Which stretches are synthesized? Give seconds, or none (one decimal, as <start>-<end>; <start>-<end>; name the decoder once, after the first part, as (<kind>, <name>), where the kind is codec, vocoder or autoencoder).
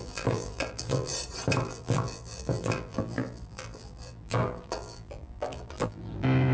0.0-1.1 (vocoder, BigVGAN v2); 1.6-6.5